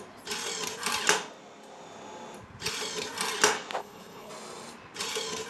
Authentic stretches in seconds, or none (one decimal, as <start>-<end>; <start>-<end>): 0.0-3.8; 4.3-5.5